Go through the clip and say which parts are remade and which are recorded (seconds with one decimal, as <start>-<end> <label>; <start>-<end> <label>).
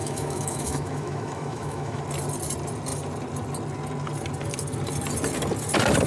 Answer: 0.0-2.0 remade; 2.0-6.1 recorded